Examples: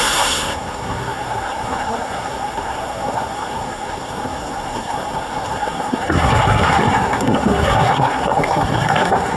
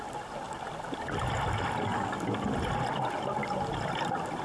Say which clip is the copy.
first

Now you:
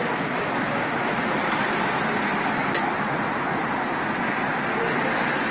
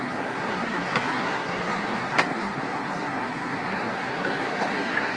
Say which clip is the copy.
second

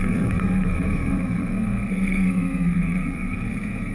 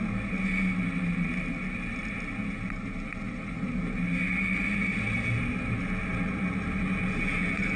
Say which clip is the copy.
first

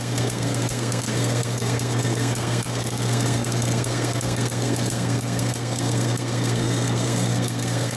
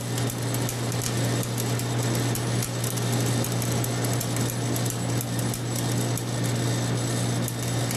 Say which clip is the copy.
first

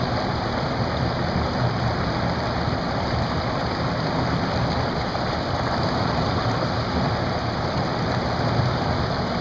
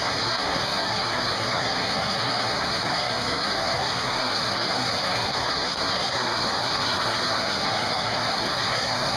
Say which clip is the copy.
second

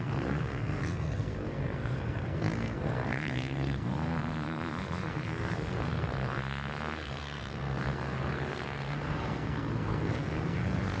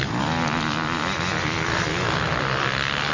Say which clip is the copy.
first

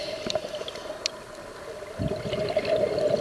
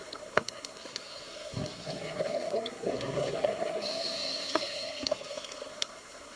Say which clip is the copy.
second